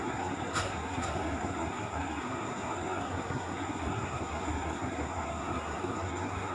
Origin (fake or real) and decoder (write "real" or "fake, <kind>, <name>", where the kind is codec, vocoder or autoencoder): fake, codec, SNAC